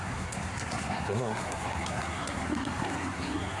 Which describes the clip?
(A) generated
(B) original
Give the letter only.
A